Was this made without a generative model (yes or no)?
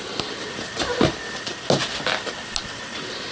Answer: yes